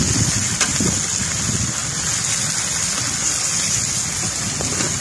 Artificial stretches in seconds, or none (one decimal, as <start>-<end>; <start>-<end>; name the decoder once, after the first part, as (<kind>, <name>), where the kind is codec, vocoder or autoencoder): none